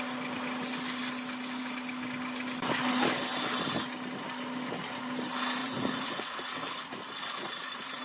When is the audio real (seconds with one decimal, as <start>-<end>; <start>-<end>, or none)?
0.0-5.6